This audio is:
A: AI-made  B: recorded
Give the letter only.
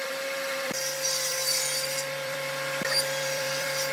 A